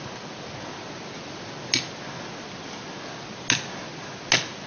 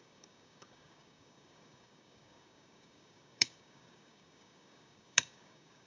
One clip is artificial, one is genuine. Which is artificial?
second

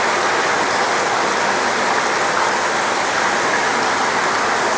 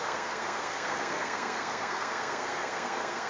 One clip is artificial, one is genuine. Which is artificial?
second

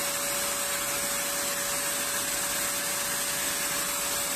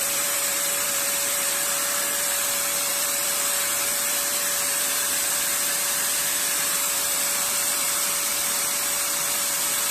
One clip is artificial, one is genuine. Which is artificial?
second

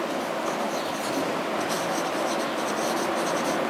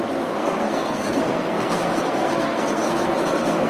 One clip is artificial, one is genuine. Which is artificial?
second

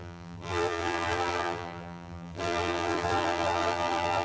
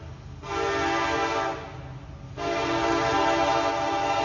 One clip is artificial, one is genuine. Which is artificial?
first